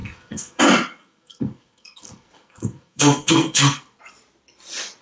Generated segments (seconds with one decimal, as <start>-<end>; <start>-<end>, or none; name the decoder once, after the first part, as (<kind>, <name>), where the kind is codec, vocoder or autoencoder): 0.0-0.6 (codec, SNAC); 1.0-4.0

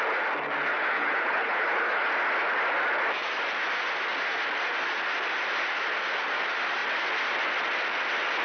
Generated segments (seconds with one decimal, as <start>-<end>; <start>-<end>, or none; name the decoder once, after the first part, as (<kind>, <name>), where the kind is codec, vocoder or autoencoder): 0.7-2.1 (codec, HILCodec)

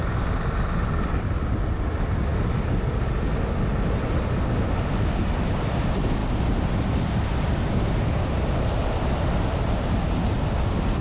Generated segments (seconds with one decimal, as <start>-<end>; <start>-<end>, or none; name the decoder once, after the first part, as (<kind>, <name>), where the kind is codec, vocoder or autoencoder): none

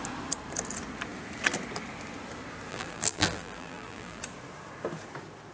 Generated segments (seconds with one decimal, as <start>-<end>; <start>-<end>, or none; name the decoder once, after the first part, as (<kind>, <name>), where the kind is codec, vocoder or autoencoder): 2.7-4.2 (vocoder, BigVGAN v2)

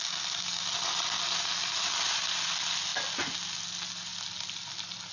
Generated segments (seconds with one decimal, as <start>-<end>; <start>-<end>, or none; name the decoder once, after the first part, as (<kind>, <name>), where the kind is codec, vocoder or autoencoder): none

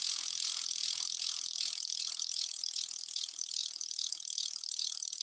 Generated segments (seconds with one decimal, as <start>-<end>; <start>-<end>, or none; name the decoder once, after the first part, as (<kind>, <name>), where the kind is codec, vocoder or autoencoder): none

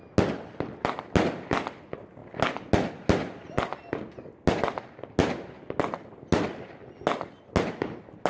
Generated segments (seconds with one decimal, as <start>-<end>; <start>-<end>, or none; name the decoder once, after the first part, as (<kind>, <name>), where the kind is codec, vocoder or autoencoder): none

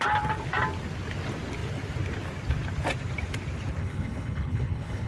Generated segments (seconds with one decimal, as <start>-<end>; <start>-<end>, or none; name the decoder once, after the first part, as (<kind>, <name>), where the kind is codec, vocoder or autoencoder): 3.8-5.1 (codec, HILCodec)